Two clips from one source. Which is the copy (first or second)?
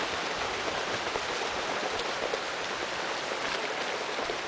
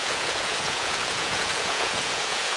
second